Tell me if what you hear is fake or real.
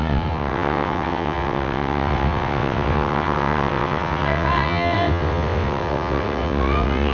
fake